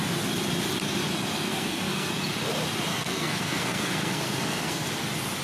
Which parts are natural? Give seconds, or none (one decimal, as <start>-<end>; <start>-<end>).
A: 0.0-1.5; 2.1-2.9; 4.9-5.4